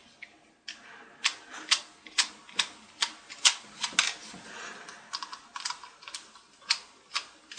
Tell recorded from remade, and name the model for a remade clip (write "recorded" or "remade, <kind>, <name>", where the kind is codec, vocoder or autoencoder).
recorded